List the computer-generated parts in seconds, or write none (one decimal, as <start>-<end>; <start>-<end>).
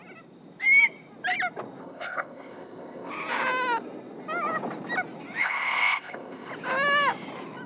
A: 1.8-3.1; 5.4-6.5